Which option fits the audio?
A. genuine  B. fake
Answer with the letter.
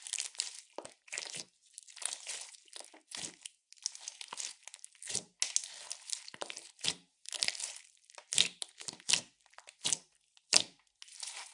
A